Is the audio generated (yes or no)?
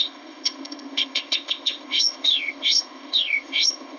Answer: yes